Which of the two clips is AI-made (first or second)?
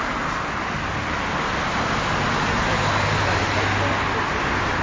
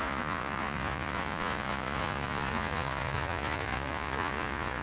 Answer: second